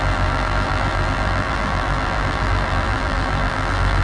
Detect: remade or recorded remade